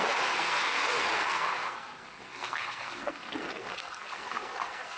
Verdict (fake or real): fake